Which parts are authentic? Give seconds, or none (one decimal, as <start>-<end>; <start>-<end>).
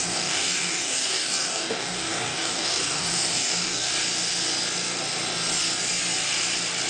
3.9-6.9